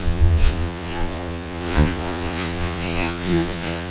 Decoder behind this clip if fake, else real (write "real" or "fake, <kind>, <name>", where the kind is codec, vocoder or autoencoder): fake, vocoder, Vocos